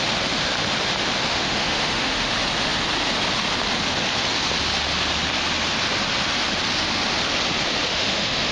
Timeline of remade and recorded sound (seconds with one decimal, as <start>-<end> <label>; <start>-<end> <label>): 0.0-1.3 recorded; 1.3-2.3 remade; 2.3-7.9 recorded; 7.9-8.5 remade